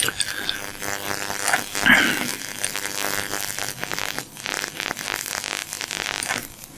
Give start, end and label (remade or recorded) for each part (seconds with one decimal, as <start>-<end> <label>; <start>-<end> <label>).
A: 0.0-6.8 recorded